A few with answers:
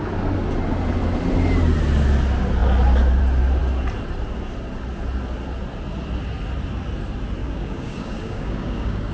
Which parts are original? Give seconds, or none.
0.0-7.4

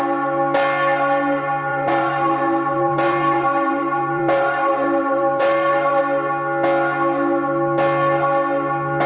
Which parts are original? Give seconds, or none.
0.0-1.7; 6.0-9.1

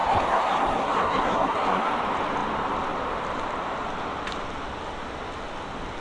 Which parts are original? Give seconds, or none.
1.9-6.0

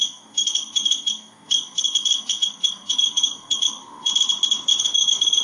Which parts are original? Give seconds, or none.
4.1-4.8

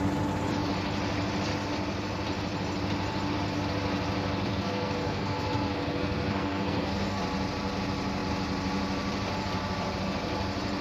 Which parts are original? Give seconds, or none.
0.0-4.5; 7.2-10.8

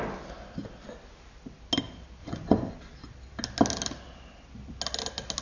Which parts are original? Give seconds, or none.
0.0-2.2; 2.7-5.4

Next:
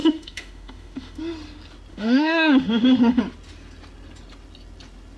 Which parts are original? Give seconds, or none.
1.2-1.9; 3.2-5.2